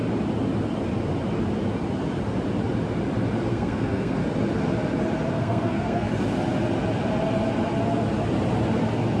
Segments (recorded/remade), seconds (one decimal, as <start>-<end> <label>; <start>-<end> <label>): 0.0-3.5 recorded; 3.5-4.2 remade; 4.2-5.3 recorded; 5.3-6.1 remade; 6.1-9.2 recorded